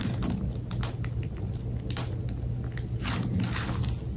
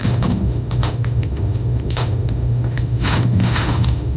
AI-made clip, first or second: second